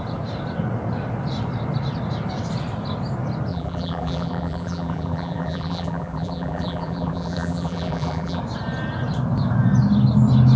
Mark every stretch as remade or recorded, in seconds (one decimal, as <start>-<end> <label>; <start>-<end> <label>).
0.0-3.5 recorded; 3.5-8.4 remade; 8.4-10.6 recorded